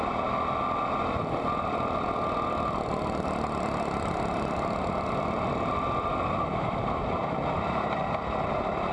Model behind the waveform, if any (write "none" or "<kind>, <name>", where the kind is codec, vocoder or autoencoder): none